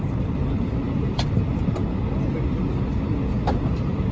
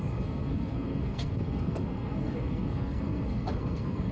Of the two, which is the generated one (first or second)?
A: second